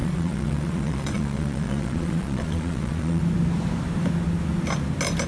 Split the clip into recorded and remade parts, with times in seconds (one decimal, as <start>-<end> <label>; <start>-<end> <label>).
0.0-3.2 remade; 3.2-5.3 recorded